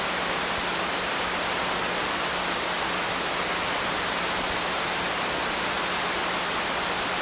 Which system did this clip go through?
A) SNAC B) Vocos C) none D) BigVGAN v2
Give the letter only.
C